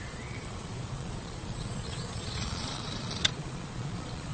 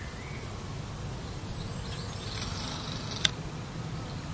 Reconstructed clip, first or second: first